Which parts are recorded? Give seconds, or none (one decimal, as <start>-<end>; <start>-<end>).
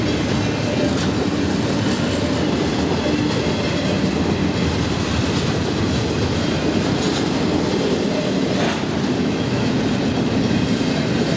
0.0-9.2; 9.8-11.4